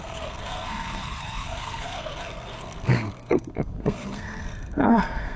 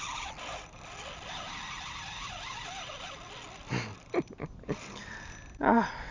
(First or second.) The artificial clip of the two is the first